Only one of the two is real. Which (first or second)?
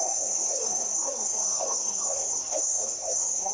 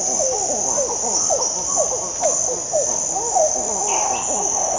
second